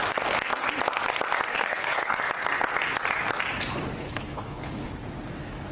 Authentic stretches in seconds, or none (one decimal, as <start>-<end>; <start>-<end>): 0.0-1.5; 2.2-4.0; 4.9-5.7